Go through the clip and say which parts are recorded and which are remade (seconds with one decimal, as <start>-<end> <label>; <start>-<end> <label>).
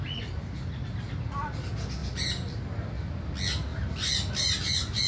0.0-2.0 recorded; 2.0-2.6 remade; 2.6-5.1 recorded